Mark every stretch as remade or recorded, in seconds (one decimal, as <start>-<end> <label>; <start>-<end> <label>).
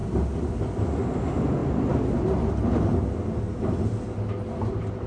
0.0-5.1 recorded